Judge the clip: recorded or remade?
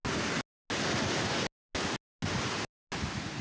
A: recorded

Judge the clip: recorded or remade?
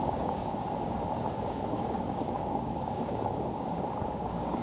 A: remade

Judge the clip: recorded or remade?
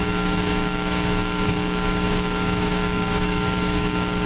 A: remade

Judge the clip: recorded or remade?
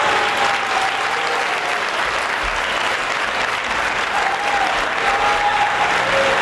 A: recorded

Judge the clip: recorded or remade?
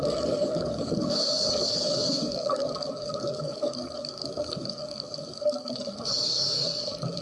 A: remade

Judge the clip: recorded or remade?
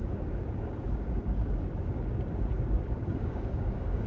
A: remade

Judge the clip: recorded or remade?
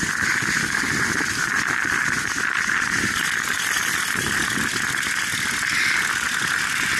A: recorded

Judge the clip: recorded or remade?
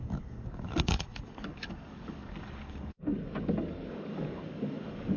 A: remade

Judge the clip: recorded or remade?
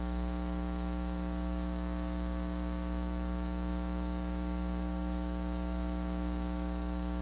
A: remade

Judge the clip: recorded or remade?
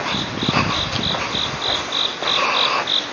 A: recorded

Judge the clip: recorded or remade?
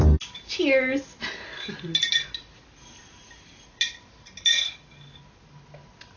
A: recorded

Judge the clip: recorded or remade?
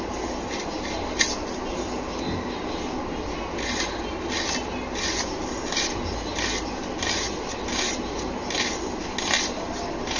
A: recorded